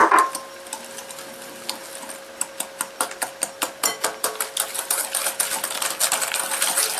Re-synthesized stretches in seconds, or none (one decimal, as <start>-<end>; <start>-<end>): none